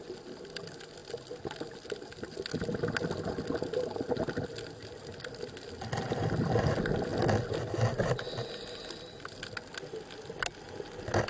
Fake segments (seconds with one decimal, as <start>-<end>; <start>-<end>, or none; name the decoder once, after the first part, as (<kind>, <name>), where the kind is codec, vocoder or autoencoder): none